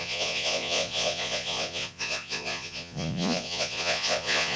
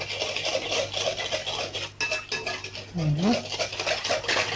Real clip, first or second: second